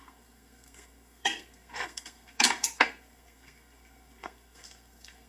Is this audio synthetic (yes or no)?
yes